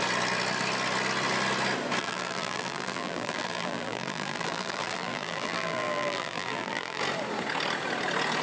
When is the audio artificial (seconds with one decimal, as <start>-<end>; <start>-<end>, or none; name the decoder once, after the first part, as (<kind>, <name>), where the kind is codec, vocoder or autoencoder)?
2.0-7.0 (vocoder, BigVGAN v2)